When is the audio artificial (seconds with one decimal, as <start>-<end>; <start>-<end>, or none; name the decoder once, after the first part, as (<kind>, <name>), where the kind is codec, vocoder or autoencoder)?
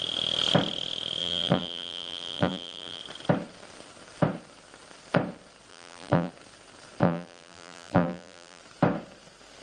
1.2-3.0 (vocoder, BigVGAN v2); 5.7-6.3; 7.0-8.6